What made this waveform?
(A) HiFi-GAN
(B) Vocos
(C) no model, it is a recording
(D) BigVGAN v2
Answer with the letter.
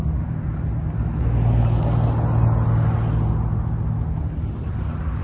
C